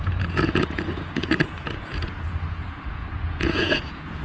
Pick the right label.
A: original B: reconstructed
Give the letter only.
B